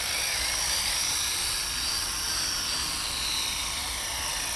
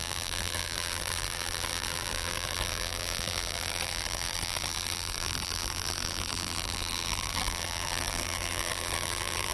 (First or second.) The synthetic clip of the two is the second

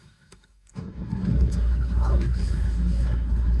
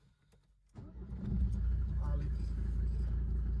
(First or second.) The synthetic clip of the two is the first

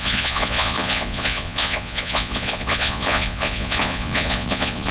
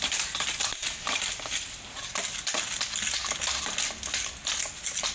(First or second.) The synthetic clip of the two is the first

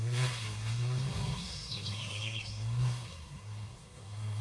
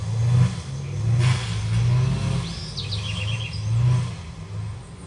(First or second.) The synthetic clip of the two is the first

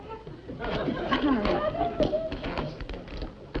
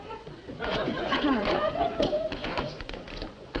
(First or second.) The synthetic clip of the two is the second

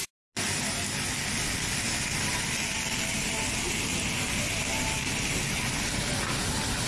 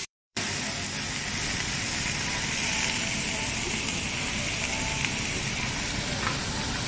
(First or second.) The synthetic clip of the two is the second